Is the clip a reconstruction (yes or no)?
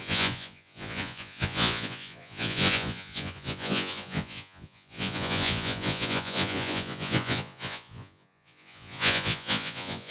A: yes